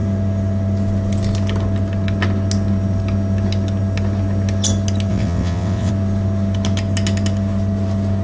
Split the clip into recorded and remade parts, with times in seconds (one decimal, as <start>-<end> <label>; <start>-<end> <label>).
0.0-5.1 recorded; 5.1-5.9 remade; 5.9-8.2 recorded